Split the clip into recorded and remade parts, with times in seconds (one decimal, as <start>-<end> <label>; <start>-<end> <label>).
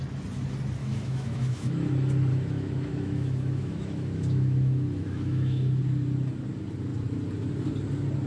0.0-0.8 recorded; 0.8-1.9 remade; 1.9-2.3 recorded; 2.3-5.8 remade; 5.8-8.3 recorded